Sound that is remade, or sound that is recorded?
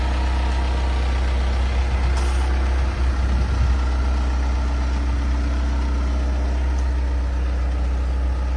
recorded